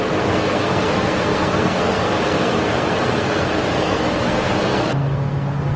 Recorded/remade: remade